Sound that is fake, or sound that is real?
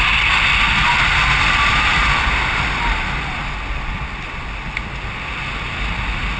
real